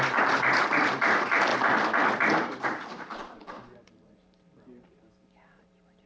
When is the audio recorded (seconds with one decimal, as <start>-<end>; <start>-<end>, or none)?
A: 1.5-2.1